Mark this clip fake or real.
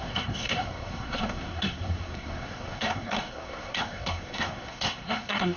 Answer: fake